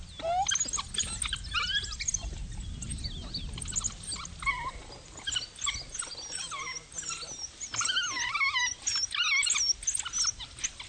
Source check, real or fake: real